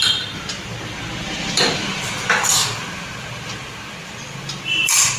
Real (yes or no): no